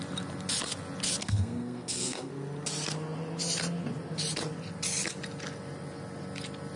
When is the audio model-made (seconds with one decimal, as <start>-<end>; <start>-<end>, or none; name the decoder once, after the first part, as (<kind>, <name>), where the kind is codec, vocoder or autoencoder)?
1.2-2.3 (codec, SNAC)